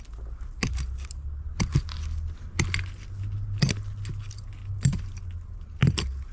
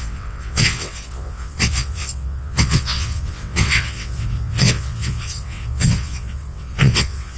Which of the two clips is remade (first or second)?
second